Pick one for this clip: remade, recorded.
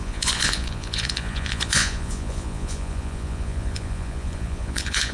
remade